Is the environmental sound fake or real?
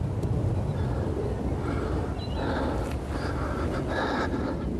real